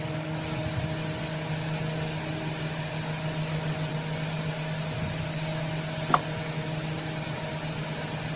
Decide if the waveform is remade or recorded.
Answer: recorded